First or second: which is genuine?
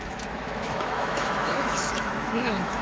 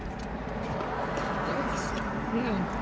second